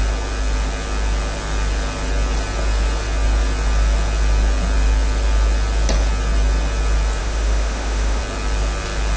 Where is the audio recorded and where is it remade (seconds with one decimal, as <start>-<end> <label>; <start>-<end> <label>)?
0.0-7.2 recorded; 7.2-8.2 remade; 8.2-9.2 recorded